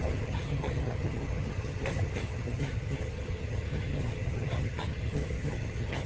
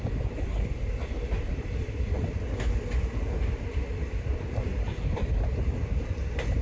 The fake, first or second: first